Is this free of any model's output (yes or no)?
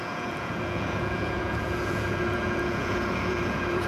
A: no